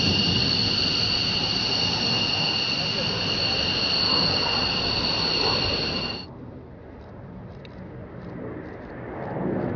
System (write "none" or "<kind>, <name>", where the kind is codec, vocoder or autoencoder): none